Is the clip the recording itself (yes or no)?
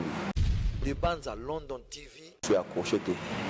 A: yes